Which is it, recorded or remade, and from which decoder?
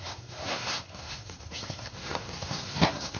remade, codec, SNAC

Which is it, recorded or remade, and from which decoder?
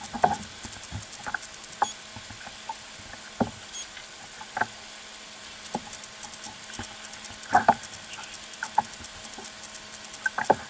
recorded